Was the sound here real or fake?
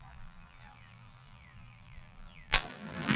fake